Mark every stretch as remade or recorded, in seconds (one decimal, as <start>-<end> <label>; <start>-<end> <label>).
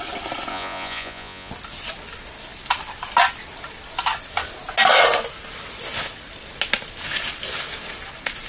0.0-0.5 recorded; 0.5-1.5 remade; 1.5-8.5 recorded